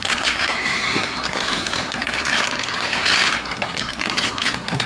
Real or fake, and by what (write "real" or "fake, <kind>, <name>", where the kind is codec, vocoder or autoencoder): fake, codec, SNAC